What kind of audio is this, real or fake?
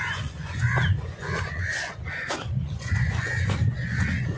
fake